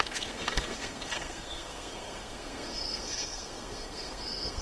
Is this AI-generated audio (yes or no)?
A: yes